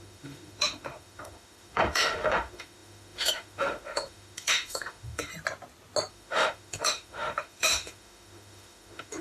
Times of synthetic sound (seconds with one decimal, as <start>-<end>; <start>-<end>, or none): 0.0-5.3; 6.1-9.2